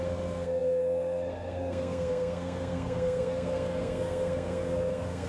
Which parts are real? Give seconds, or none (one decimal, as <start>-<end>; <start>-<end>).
none